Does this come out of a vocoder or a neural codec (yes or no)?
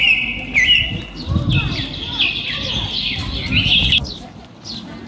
no